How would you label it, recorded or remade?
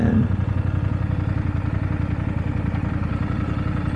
recorded